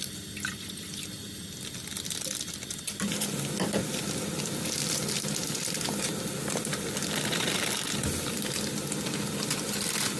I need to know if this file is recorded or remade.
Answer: recorded